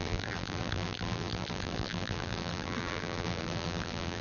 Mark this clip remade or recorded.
remade